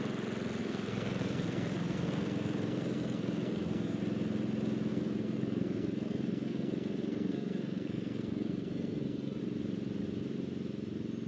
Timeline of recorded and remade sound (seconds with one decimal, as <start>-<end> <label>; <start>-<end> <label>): 0.0-0.6 recorded; 0.6-4.0 remade; 4.0-4.9 recorded; 4.9-9.4 remade; 9.4-11.3 recorded